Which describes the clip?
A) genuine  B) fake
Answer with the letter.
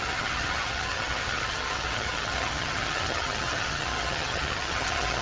B